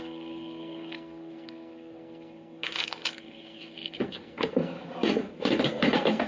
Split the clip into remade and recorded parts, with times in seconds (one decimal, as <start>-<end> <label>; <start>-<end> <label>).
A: 0.0-6.3 remade